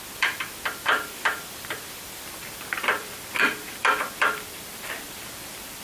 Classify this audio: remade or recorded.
remade